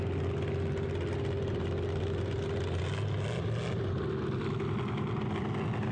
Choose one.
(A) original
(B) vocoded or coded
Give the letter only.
A